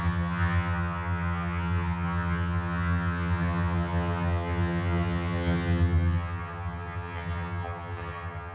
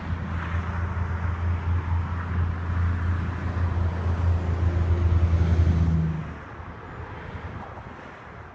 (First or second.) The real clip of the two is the second